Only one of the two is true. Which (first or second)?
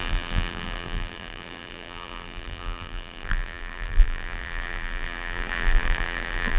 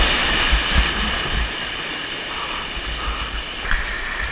second